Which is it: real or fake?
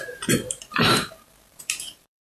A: fake